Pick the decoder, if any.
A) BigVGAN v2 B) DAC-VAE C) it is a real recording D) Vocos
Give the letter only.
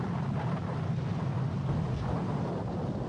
C